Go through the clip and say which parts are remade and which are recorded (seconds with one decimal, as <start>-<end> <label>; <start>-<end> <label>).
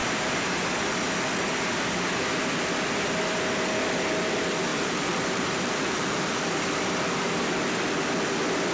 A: 0.0-4.7 recorded; 4.7-6.5 remade; 6.5-8.7 recorded